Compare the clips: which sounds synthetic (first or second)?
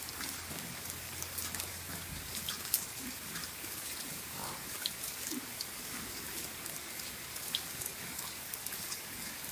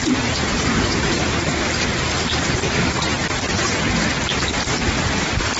first